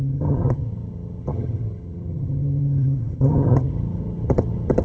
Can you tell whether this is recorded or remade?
remade